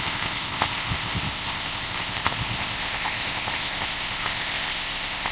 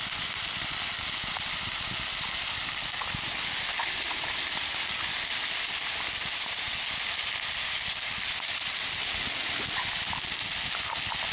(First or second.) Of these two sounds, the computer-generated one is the first